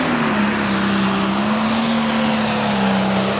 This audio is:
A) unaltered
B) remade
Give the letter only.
A